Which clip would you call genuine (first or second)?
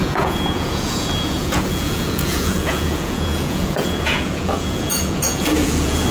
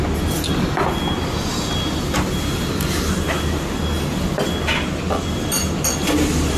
second